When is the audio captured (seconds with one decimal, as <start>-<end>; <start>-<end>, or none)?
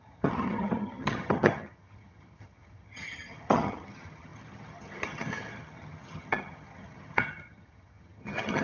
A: none